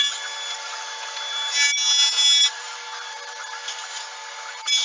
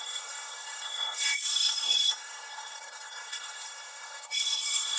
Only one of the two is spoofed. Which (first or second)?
second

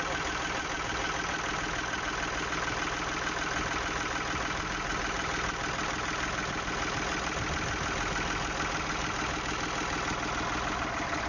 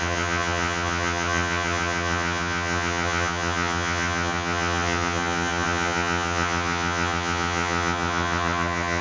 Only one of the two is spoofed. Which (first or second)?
second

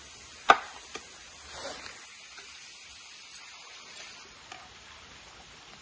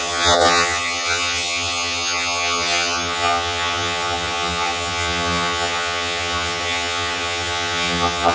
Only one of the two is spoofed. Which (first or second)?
second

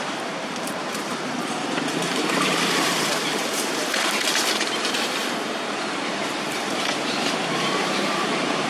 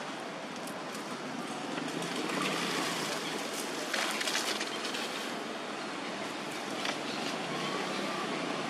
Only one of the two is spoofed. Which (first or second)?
first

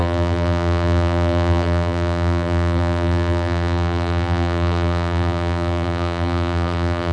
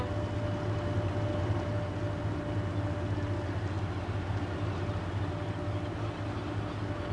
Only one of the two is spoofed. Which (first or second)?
first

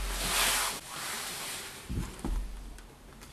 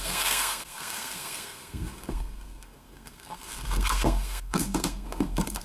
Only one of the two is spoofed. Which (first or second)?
second